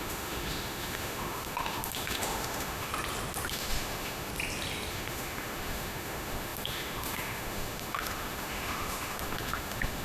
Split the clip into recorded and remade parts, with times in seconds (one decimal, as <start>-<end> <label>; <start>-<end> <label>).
0.0-2.9 remade; 2.9-3.5 recorded; 3.5-4.3 remade; 4.3-4.9 recorded; 4.9-10.0 remade